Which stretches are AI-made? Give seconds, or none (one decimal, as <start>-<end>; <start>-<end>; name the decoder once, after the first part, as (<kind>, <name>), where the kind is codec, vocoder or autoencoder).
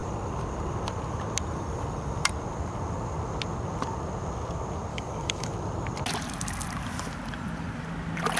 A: 4.9-5.5 (codec, DAC)